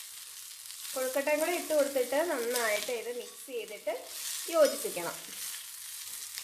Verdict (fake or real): real